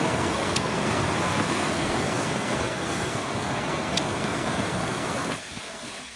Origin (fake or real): fake